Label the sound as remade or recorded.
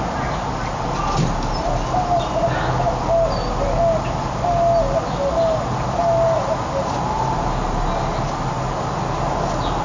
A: recorded